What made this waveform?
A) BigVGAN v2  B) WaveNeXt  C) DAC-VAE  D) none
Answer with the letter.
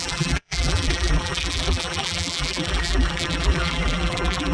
A